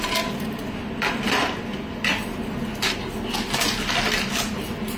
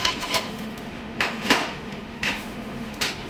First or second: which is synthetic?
second